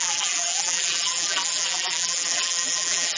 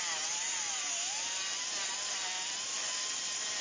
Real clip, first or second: second